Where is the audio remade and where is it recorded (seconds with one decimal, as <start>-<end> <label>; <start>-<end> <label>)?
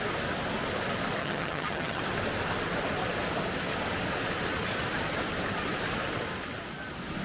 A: 0.0-1.2 recorded; 1.2-2.0 remade; 2.0-7.2 recorded